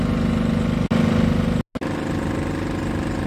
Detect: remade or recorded recorded